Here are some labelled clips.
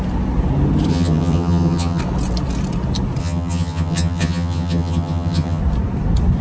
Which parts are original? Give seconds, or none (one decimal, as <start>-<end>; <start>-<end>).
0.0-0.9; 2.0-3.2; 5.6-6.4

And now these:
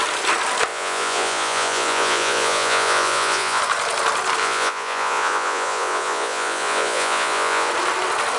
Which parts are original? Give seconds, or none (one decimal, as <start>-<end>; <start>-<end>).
0.0-0.7; 3.6-4.4; 7.7-8.4

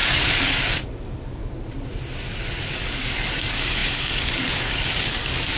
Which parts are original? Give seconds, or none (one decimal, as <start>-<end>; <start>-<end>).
1.4-2.7